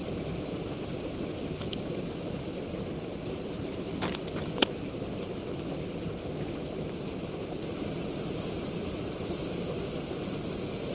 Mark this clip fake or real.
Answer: real